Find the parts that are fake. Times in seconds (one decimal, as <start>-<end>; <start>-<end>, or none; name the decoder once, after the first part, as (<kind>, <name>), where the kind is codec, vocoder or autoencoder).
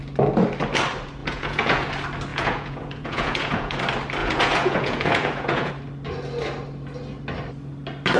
1.2-1.9 (vocoder, Vocos); 2.3-3.8; 4.2-5.7